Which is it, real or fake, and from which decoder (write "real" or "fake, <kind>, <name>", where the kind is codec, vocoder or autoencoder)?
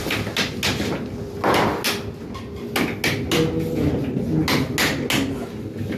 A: real